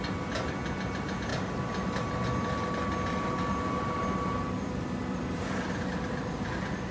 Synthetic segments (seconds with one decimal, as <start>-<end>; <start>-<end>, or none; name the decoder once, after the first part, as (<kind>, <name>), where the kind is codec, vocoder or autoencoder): none